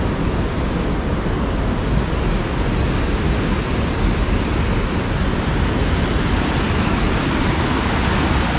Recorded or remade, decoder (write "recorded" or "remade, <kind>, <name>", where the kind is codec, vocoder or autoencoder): recorded